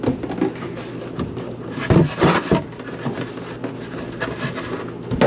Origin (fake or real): real